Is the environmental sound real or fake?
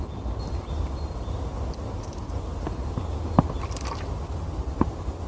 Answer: real